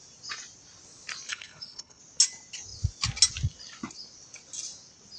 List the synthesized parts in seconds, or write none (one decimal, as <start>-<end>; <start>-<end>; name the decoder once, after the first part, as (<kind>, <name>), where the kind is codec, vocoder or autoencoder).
1.3-2.0 (codec, HILCodec)